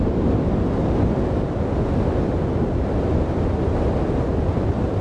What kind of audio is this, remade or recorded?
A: recorded